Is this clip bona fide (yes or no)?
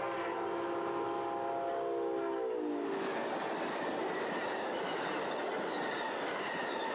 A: yes